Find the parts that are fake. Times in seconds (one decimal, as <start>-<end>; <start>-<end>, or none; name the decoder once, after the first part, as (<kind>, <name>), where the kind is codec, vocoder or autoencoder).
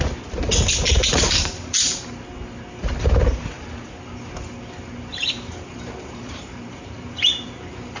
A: 0.9-2.0 (vocoder, BigVGAN v2); 3.3-3.9; 5.1-8.0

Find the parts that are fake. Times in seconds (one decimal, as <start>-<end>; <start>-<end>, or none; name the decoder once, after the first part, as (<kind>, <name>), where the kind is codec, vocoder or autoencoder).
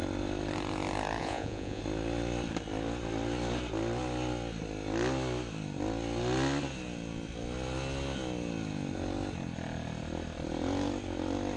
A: 1.2-1.8 (vocoder, Vocos)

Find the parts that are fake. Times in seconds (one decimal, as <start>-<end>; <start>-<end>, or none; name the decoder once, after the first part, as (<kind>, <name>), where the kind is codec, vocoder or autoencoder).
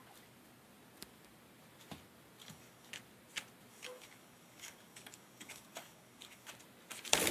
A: 2.4-2.9 (codec, DAC); 3.7-6.5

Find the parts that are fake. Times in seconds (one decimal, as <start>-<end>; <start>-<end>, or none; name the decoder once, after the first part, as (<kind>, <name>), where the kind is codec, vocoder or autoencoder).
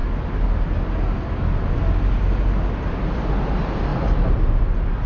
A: none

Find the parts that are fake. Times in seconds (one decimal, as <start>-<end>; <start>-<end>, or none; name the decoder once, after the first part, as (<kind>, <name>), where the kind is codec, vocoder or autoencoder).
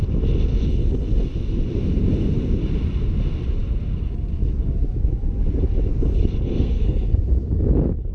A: 6.5-7.0 (codec, SNAC)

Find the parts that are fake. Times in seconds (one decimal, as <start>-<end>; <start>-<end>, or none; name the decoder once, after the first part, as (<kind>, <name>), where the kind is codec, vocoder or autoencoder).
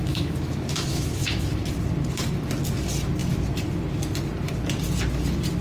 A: 0.0-1.6 (autoencoder, DAC-VAE)